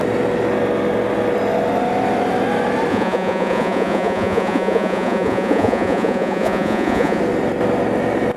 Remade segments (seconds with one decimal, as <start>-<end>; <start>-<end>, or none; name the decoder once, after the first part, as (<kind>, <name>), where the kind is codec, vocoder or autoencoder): 2.9-7.2 (vocoder, Vocos)